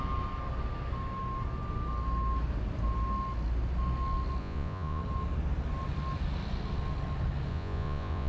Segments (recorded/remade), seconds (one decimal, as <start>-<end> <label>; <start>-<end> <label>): 0.0-4.4 recorded; 4.4-5.0 remade; 5.0-7.5 recorded; 7.5-8.3 remade